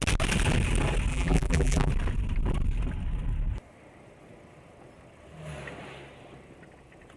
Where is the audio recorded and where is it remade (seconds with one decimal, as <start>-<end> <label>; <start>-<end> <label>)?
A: 0.0-1.1 recorded; 1.1-1.9 remade; 1.9-7.2 recorded

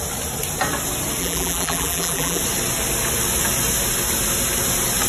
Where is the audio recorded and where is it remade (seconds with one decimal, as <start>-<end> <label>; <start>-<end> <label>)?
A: 0.0-1.2 recorded; 1.2-2.4 remade; 2.4-5.1 recorded

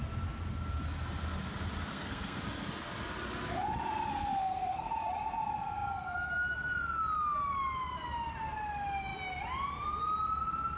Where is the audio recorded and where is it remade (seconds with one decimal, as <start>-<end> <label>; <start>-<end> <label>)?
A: 0.0-1.9 recorded; 1.9-2.4 remade; 2.4-4.1 recorded; 4.1-4.9 remade; 4.9-10.8 recorded

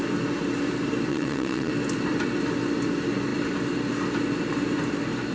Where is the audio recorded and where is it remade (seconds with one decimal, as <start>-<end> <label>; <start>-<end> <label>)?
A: 0.0-1.1 recorded; 1.1-1.7 remade; 1.7-5.3 recorded

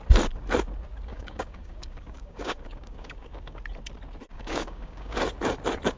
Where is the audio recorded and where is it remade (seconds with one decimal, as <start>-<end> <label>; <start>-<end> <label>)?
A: 0.0-1.1 recorded; 1.1-3.6 remade; 3.6-4.3 recorded; 4.3-5.2 remade; 5.2-6.0 recorded

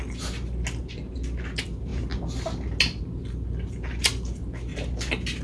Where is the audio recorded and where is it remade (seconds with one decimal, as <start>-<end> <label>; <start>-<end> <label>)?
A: 0.0-5.4 recorded